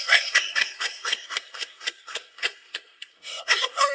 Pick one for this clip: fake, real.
fake